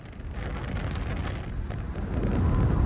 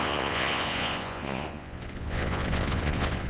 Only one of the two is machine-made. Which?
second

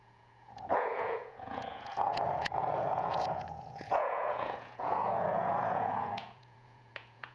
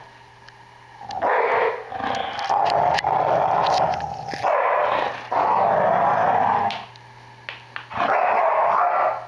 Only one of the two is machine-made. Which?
first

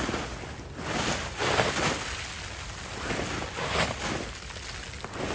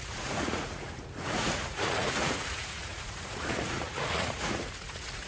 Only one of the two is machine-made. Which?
second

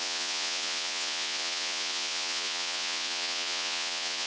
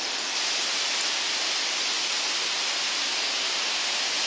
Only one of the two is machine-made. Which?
first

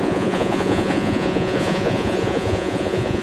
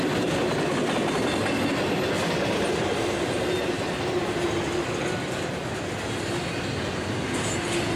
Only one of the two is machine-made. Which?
first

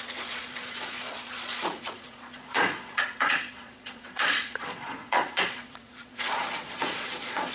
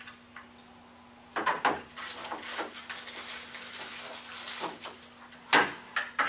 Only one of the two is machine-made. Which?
first